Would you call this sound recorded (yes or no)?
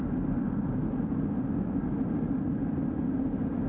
yes